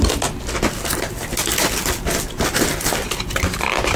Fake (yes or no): no